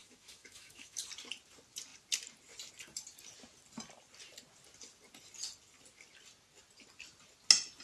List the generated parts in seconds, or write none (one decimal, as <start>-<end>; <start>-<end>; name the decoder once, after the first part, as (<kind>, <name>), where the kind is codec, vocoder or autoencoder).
0.0-1.0 (autoencoder, DAC-VAE)